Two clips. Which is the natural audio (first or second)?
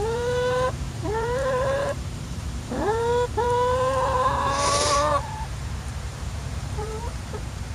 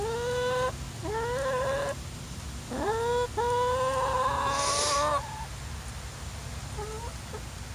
second